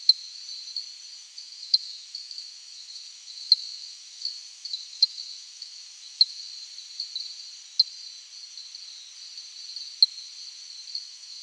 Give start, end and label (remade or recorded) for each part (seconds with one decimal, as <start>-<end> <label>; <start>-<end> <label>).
0.0-0.4 remade; 0.4-1.2 recorded; 1.2-6.5 remade; 6.5-11.0 recorded; 11.0-11.4 remade